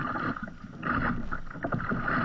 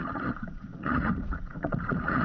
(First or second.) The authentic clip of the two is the first